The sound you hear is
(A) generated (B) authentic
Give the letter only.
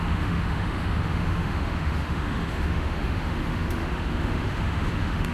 A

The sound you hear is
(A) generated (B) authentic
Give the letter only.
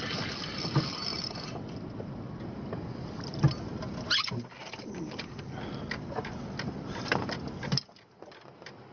B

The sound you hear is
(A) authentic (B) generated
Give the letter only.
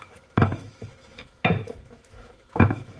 B